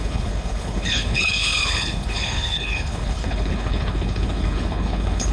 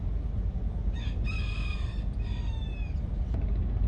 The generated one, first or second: first